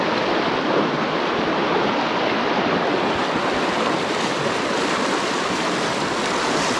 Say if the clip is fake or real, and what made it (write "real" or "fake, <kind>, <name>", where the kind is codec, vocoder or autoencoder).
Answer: real